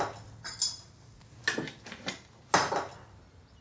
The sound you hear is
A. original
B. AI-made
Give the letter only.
A